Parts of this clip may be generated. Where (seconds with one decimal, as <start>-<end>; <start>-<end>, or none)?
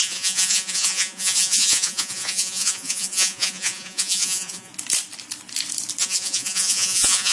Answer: 0.0-4.7; 6.0-7.3